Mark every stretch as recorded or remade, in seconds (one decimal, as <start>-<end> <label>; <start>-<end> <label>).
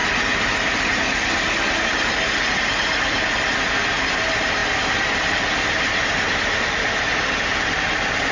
0.0-8.3 recorded